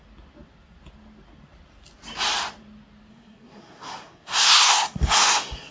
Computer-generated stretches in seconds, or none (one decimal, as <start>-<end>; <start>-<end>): 3.1-5.7